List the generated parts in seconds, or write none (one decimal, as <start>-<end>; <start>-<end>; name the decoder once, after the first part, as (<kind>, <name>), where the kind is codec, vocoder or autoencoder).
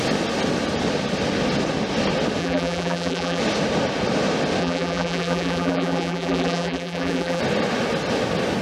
2.4-3.4 (vocoder, BigVGAN v2); 4.6-7.4